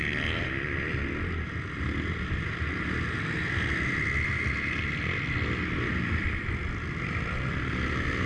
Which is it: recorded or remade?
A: recorded